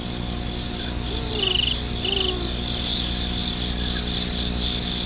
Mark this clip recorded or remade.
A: recorded